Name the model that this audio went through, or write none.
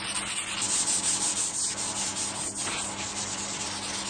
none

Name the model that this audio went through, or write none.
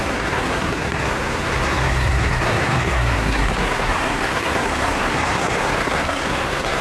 codec, SNAC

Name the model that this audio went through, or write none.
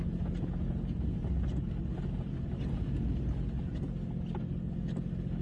none